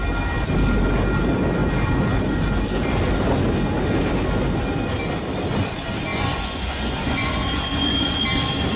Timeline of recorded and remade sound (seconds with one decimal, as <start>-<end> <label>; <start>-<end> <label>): 0.0-6.1 recorded; 6.1-8.2 remade; 8.2-8.8 recorded